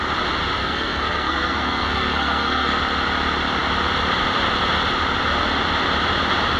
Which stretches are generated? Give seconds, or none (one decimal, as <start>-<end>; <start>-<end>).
0.6-2.8